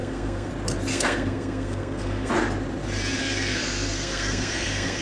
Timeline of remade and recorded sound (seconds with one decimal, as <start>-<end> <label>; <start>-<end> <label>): 0.0-0.5 remade; 0.5-0.9 recorded; 0.9-2.3 remade; 2.3-3.2 recorded; 3.2-5.0 remade